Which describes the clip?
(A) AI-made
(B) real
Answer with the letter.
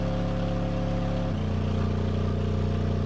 B